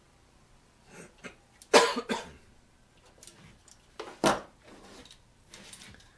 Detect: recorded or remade recorded